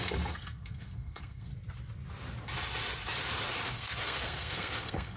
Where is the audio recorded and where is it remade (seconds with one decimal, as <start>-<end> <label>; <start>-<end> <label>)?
0.0-1.5 remade; 1.5-3.7 recorded; 3.7-5.2 remade